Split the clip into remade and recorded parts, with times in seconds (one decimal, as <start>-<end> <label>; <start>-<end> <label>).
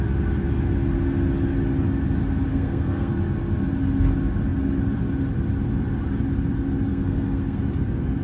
0.0-2.5 recorded; 2.5-3.1 remade; 3.1-6.9 recorded; 6.9-7.6 remade; 7.6-8.2 recorded